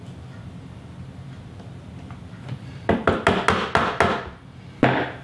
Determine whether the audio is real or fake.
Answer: real